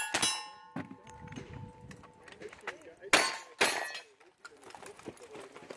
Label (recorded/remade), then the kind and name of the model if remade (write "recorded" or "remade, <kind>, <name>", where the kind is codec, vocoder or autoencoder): recorded